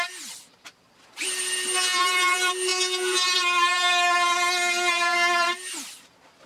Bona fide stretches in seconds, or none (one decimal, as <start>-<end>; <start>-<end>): 0.0-6.5

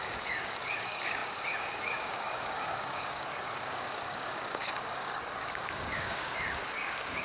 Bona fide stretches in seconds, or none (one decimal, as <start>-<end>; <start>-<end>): none

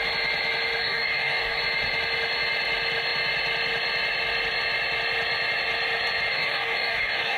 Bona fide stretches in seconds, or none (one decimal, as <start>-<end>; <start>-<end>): 0.0-0.8; 1.6-6.3

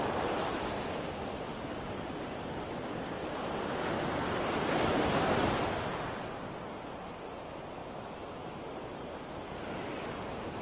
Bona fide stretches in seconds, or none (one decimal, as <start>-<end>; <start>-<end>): 0.0-1.5; 2.6-10.6

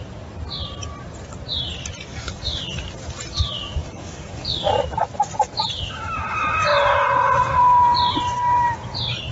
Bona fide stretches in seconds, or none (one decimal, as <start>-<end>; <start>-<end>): 0.0-2.1; 2.6-3.8; 4.8-9.3

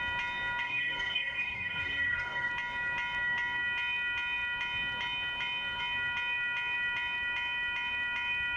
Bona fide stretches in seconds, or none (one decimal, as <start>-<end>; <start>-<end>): 0.0-0.6; 2.5-8.6

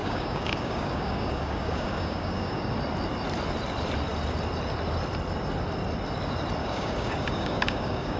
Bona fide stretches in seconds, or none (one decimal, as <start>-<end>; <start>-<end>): 2.7-6.6